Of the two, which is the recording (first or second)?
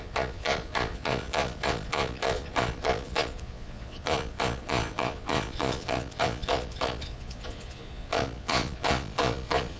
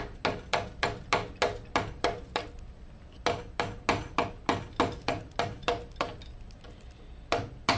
second